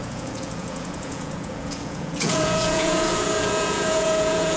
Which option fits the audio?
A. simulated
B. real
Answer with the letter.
A